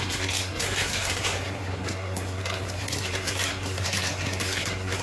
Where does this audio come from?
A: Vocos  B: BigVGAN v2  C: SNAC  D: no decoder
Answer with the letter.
C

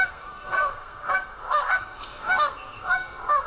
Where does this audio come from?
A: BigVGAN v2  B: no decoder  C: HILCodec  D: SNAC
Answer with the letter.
D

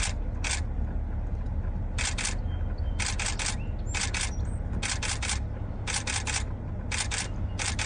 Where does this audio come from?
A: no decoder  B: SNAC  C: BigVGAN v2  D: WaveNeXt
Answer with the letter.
A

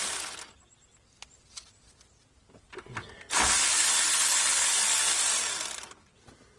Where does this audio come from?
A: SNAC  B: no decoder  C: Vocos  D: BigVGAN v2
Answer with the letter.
B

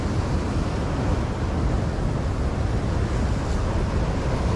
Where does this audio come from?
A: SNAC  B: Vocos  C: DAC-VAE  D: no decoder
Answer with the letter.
D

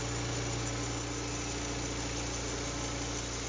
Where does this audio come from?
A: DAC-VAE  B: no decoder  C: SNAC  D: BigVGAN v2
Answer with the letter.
B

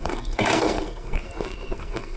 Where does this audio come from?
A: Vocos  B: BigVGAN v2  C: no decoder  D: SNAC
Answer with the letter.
D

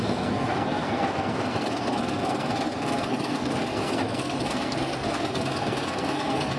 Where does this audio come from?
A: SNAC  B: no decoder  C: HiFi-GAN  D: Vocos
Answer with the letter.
A